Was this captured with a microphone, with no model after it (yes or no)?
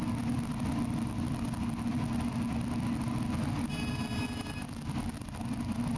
yes